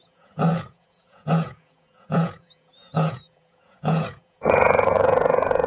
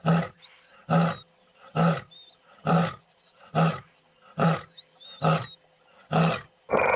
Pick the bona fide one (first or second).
second